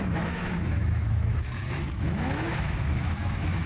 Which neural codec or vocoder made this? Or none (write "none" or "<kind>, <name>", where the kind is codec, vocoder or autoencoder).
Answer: autoencoder, DAC-VAE